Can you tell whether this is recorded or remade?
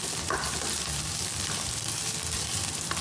remade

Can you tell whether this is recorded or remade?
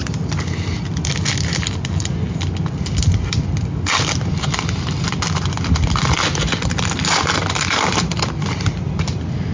remade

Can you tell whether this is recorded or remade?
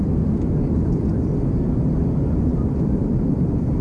remade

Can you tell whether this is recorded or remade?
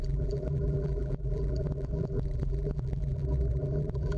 remade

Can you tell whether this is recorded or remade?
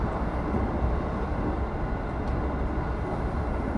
remade